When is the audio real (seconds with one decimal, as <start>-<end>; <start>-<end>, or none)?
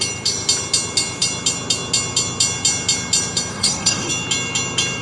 0.0-3.5; 4.1-5.0